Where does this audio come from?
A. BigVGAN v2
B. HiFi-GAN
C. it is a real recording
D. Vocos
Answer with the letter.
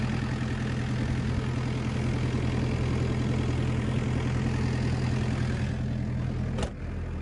C